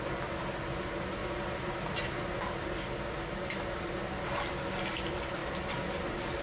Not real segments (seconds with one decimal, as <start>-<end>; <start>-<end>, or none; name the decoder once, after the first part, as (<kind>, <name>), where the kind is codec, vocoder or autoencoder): none